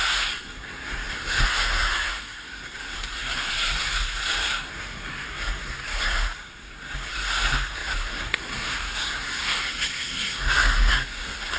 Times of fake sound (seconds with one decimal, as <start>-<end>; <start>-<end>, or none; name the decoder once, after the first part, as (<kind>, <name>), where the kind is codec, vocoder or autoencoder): 0.0-11.6 (codec, SNAC)